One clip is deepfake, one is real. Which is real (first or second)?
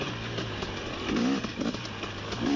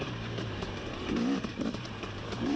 first